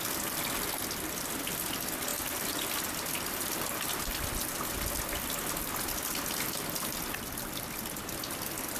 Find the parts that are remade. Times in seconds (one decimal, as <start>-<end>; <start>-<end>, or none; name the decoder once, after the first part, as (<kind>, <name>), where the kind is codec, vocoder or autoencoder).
none